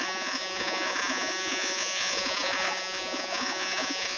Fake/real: fake